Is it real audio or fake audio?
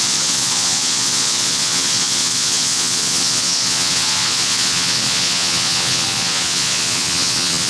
fake